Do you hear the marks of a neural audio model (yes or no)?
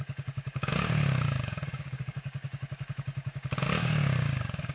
yes